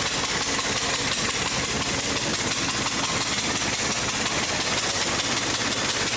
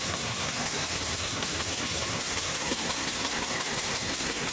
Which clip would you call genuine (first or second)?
first